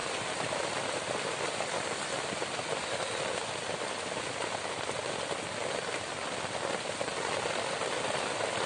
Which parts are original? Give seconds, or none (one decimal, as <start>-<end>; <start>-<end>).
0.0-8.7